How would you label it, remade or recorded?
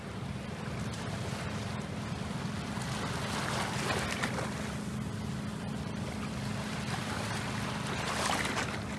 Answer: recorded